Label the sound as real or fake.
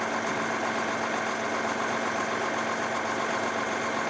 real